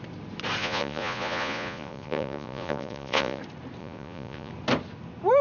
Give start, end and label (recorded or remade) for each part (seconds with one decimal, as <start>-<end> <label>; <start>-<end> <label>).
0.0-0.6 recorded; 0.6-3.4 remade; 3.4-3.8 recorded; 3.8-4.5 remade; 4.5-5.4 recorded